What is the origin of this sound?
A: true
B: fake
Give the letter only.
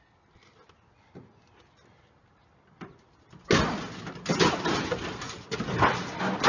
A